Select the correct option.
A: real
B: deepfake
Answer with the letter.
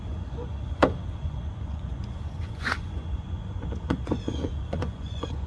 B